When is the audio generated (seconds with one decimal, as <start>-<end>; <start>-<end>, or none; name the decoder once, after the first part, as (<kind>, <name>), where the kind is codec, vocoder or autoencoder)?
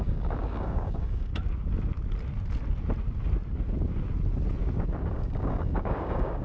0.0-1.3 (codec, DAC); 5.1-6.4